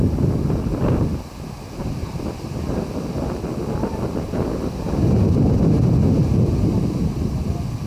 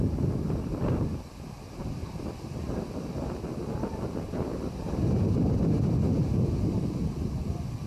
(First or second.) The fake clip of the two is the second